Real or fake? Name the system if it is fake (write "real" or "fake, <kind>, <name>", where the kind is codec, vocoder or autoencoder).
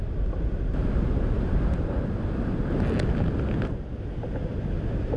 real